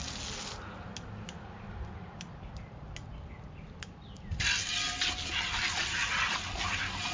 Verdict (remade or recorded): recorded